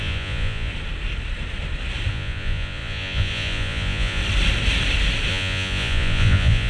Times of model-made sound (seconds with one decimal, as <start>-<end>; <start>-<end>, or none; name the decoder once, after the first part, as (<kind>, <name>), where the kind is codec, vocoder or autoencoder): 0.0-0.7 (vocoder, Vocos); 2.1-4.2; 5.3-6.7